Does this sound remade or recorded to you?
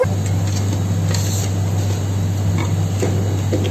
recorded